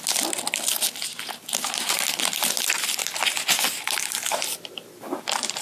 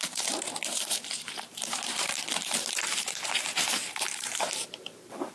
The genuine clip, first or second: first